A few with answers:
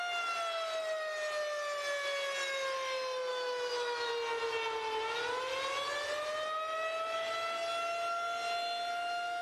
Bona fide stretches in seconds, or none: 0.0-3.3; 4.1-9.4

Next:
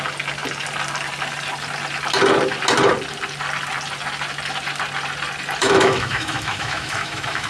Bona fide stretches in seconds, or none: 0.0-5.6